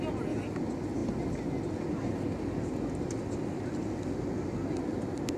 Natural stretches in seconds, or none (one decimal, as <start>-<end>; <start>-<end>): 0.0-5.4